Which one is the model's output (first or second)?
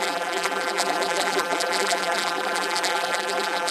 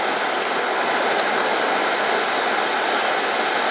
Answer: first